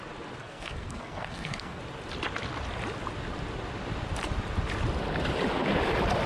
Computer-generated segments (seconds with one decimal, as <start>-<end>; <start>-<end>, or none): 0.4-1.8